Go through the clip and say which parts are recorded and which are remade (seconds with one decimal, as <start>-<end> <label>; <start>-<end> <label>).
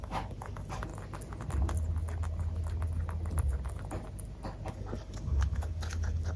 0.0-0.9 remade; 0.9-4.7 recorded; 4.7-6.4 remade